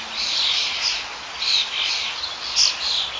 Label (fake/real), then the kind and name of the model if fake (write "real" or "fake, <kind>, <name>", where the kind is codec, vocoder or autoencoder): real